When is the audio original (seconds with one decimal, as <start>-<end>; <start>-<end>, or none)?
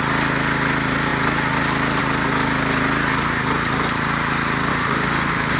0.0-4.7